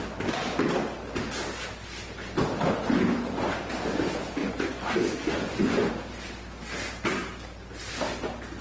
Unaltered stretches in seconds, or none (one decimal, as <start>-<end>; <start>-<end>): 0.0-4.4; 5.9-8.6